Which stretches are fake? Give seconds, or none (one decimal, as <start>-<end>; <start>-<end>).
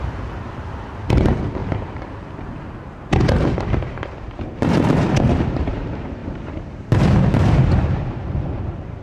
0.0-9.0